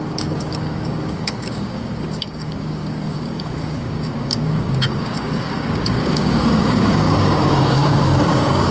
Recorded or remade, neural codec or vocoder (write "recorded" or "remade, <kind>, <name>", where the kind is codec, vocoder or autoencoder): remade, codec, DAC